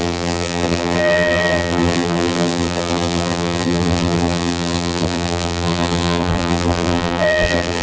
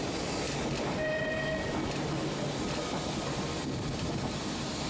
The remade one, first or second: first